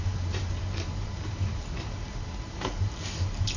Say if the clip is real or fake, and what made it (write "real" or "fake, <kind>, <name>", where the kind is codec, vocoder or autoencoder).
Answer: fake, vocoder, BigVGAN v2